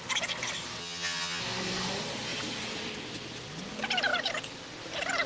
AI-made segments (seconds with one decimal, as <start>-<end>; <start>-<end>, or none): 0.8-1.4